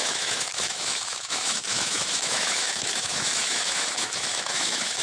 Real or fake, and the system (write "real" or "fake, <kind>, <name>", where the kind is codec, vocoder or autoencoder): fake, autoencoder, DAC-VAE